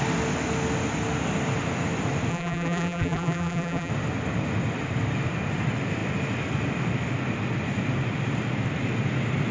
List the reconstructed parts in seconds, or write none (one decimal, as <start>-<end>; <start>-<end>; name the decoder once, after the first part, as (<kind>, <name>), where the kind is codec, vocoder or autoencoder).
2.3-3.9 (vocoder, BigVGAN v2)